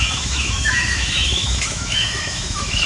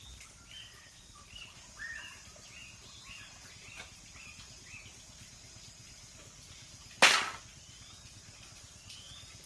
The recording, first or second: second